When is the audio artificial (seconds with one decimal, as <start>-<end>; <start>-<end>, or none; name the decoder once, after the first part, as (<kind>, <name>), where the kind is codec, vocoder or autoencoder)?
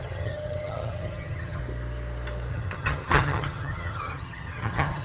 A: 0.0-1.6 (vocoder, HiFi-GAN); 2.5-5.0